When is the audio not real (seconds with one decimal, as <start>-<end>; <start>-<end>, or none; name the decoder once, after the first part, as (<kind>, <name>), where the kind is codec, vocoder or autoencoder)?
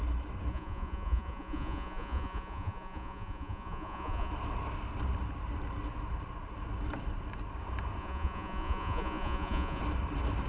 0.5-4.3 (vocoder, Vocos); 8.0-9.8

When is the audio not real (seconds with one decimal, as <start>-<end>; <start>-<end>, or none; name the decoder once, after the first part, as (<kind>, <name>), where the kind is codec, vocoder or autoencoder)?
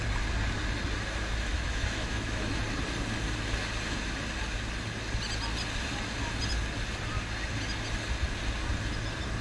1.5-2.6 (autoencoder, DAC-VAE)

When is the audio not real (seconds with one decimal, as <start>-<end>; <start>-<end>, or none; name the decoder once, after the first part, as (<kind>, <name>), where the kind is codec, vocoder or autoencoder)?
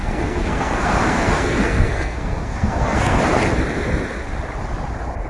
0.0-3.2 (codec, SNAC)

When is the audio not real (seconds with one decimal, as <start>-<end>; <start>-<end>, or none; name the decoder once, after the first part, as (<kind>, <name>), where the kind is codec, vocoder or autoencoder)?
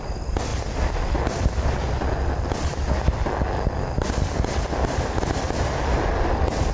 none